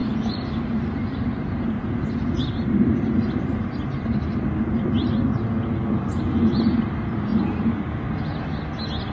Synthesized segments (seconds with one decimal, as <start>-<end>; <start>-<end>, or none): 0.0-0.6; 1.0-3.7; 7.3-8.0